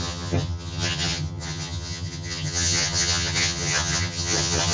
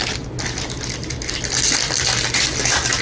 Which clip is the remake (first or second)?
first